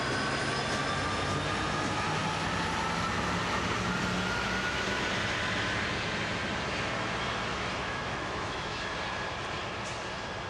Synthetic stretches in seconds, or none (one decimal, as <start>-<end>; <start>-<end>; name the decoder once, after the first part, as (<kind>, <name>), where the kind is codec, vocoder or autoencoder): 7.5-8.9 (autoencoder, DAC-VAE)